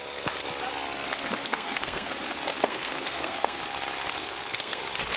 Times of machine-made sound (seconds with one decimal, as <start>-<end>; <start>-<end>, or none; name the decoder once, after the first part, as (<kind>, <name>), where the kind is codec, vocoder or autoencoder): 1.4-2.1 (codec, SNAC); 2.5-3.6; 4.2-4.8